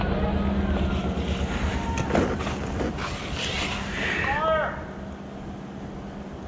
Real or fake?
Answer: real